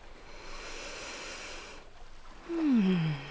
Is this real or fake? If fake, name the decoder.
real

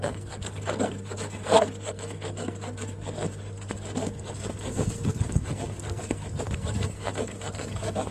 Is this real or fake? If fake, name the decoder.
fake, codec, SNAC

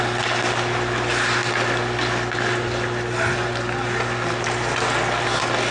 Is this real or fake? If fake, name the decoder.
real